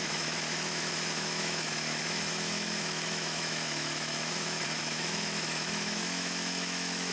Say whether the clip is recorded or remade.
remade